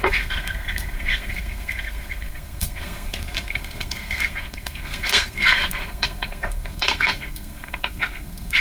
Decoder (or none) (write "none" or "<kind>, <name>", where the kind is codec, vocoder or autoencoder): codec, SNAC